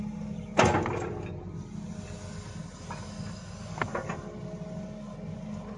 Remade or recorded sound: recorded